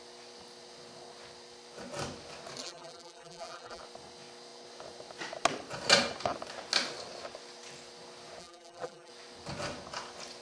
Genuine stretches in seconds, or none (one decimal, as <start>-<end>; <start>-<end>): 0.0-2.6; 3.8-8.4; 9.1-10.4